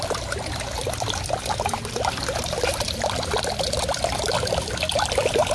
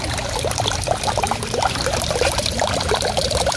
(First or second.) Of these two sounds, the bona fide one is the first